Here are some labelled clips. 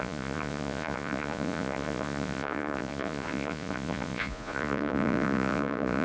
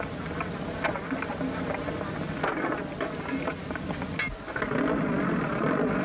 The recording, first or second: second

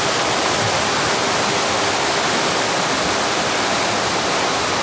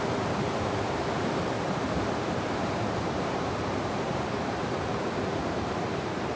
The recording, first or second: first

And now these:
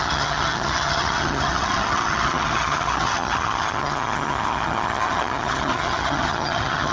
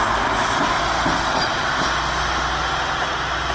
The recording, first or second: second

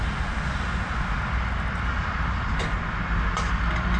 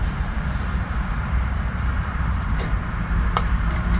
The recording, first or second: first